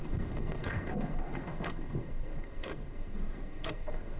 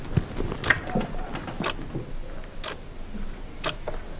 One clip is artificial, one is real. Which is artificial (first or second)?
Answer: first